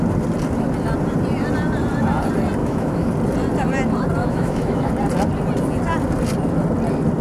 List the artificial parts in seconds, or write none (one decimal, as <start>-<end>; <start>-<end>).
2.6-3.1; 4.2-4.9